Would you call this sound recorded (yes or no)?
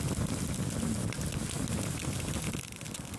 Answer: yes